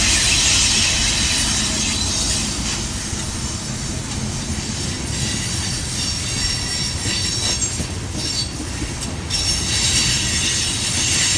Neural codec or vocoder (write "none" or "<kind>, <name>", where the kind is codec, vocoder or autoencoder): none